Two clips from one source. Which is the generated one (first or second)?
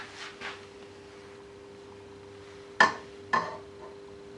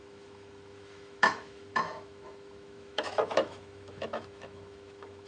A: second